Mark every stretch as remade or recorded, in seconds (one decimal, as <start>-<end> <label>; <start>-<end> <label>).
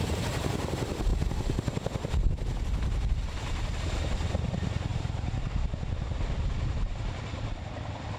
0.0-4.9 recorded; 4.9-5.7 remade; 5.7-8.2 recorded